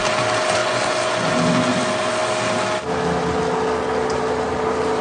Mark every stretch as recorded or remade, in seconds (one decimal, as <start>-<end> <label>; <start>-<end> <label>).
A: 0.0-0.6 recorded; 0.6-1.3 remade; 1.3-5.0 recorded